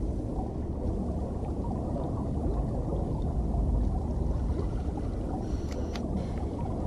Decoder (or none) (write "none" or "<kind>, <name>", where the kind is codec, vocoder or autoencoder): none